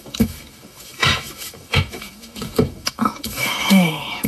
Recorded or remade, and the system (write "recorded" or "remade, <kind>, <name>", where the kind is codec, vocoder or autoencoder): remade, autoencoder, DAC-VAE